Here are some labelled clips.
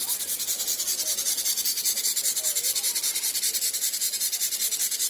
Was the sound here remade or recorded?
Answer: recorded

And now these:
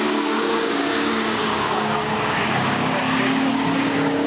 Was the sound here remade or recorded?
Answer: remade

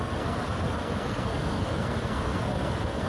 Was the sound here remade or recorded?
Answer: remade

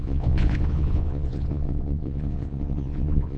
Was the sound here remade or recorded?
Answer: remade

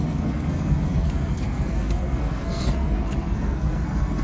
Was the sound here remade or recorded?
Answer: remade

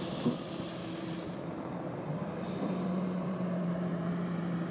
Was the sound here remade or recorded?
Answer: remade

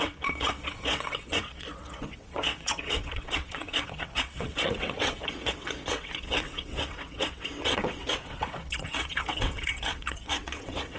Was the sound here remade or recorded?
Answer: remade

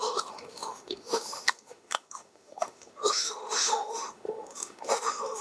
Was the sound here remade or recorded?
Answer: remade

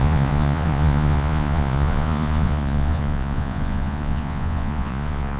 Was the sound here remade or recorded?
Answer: remade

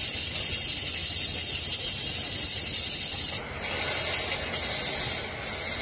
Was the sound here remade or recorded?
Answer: recorded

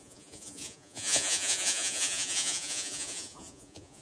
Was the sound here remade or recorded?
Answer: remade